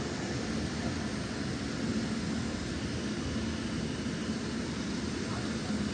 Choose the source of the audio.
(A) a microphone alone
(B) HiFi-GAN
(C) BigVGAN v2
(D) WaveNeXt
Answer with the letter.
A